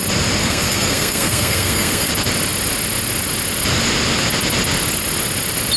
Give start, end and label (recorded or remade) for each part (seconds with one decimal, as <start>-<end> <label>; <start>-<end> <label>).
0.0-0.4 recorded; 0.4-2.1 remade; 2.1-5.8 recorded

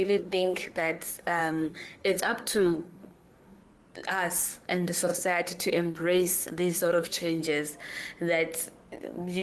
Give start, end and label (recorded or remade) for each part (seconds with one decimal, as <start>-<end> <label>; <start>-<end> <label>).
0.0-3.6 remade; 3.6-4.4 recorded; 4.4-7.4 remade; 7.4-9.0 recorded; 9.0-9.4 remade

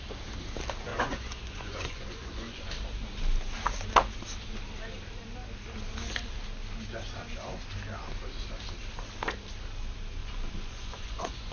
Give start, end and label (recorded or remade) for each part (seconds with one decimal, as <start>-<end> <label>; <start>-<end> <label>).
0.0-0.9 recorded; 0.9-2.7 remade; 2.7-10.2 recorded; 10.2-11.5 remade

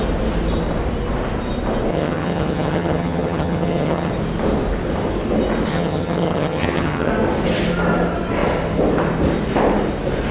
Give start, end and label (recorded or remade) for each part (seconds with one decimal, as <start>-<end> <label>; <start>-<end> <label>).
0.0-1.9 recorded; 1.9-4.1 remade; 4.1-5.7 recorded; 5.7-7.1 remade; 7.1-10.3 recorded